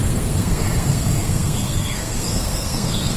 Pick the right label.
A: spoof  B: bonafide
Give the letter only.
A